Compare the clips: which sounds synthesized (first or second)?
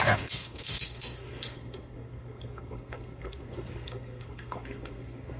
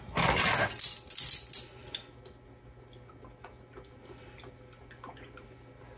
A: first